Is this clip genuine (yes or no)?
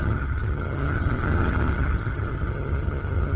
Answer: no